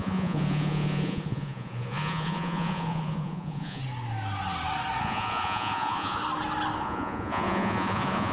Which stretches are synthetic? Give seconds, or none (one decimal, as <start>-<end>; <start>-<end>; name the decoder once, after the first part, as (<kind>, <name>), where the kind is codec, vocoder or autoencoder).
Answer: 0.0-3.8 (vocoder, Vocos); 5.0-6.2; 6.8-8.3